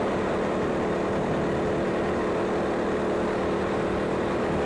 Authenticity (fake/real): real